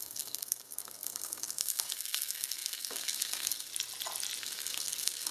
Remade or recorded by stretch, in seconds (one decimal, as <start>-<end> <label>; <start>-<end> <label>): 0.0-3.7 remade; 3.7-4.4 recorded; 4.4-5.3 remade